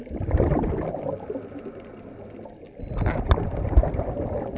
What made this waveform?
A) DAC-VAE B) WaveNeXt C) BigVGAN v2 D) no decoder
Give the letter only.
D